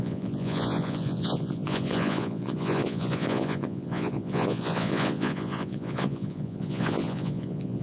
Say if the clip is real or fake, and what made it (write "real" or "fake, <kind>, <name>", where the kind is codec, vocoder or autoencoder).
fake, vocoder, Vocos